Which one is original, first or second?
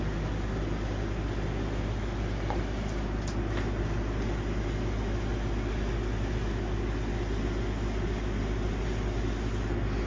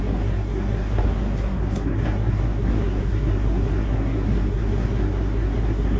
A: first